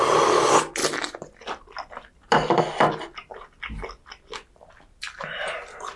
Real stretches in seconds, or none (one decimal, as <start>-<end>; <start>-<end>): 0.0-6.0